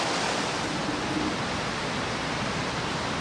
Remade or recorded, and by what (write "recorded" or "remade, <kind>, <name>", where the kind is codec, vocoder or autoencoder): recorded